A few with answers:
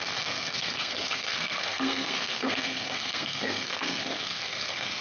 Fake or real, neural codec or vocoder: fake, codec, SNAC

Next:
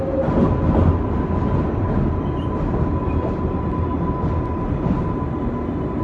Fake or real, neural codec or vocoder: real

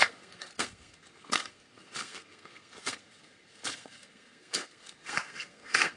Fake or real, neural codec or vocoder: fake, codec, SNAC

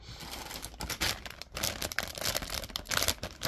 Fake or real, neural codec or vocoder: real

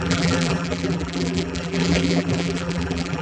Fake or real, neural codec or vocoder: fake, vocoder, BigVGAN v2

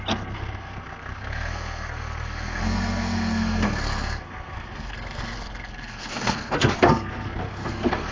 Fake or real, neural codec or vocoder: fake, codec, SNAC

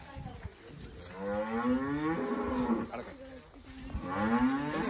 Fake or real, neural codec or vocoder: real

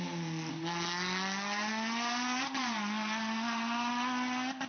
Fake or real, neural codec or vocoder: real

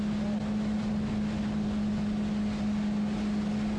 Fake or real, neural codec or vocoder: real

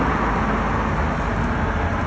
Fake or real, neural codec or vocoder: real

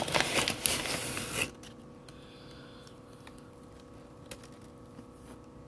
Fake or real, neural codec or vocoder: real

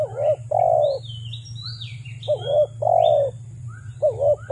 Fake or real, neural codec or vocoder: real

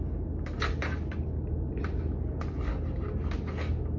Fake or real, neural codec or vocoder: real